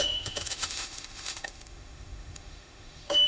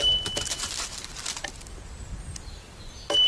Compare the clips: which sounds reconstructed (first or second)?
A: first